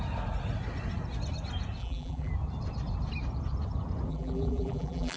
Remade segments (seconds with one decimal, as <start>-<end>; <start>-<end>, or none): 1.8-2.3; 4.1-5.2